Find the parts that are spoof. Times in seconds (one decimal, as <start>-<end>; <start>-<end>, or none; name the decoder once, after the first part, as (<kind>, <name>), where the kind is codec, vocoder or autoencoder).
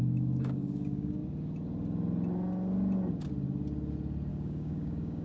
0.0-1.2 (codec, DAC); 4.3-5.2